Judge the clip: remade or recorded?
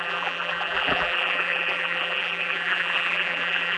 remade